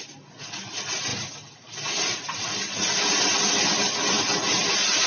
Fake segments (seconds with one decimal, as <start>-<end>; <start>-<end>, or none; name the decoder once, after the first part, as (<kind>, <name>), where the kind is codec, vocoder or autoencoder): none